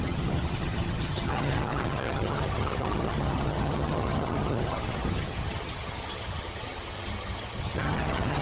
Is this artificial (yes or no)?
yes